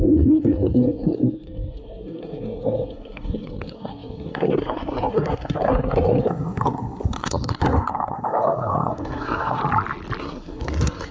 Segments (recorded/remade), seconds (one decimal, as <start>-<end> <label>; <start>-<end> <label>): 0.0-9.6 remade; 9.6-10.2 recorded; 10.2-11.1 remade

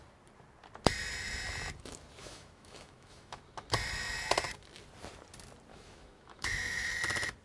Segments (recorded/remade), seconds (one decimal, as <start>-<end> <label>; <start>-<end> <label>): 0.0-2.2 recorded; 2.2-3.4 remade; 3.4-5.7 recorded; 5.7-6.9 remade; 6.9-7.4 recorded

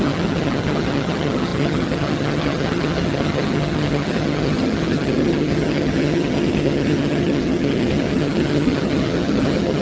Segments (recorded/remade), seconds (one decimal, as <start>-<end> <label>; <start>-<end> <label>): 0.0-9.8 remade

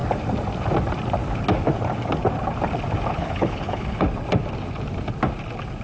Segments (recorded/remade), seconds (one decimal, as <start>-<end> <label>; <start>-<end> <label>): 0.0-3.1 recorded; 3.1-4.0 remade; 4.0-5.8 recorded

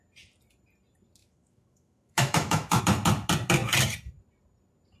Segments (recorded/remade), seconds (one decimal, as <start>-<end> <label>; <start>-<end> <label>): 0.0-1.2 recorded; 1.2-2.8 remade; 2.8-5.0 recorded